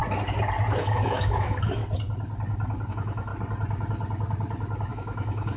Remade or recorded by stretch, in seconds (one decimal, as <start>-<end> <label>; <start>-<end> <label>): 0.0-0.8 recorded; 0.8-1.8 remade; 1.8-2.9 recorded; 2.9-3.3 remade; 3.3-4.9 recorded; 4.9-5.6 remade